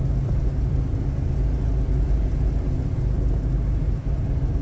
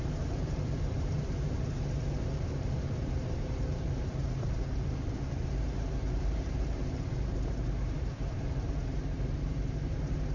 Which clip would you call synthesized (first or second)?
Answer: second